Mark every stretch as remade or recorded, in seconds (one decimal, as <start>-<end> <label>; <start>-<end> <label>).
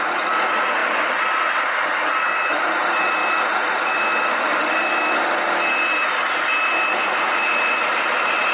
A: 0.0-8.5 recorded